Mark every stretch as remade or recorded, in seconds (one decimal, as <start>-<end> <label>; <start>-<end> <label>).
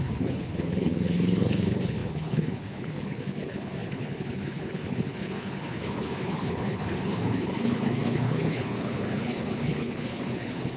0.0-10.8 remade